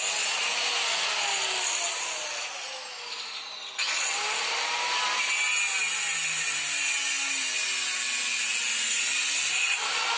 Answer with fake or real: real